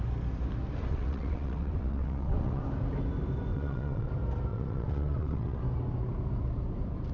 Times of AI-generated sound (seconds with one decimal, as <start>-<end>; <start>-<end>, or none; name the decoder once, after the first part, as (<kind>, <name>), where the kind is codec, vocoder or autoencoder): 0.9-2.6 (vocoder, WaveNeXt); 3.5-4.1; 4.5-5.6